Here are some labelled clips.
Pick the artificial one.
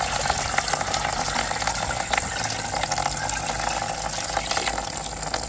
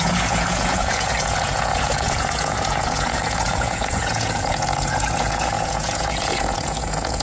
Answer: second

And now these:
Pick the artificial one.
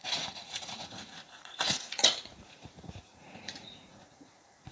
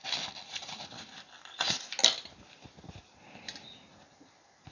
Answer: first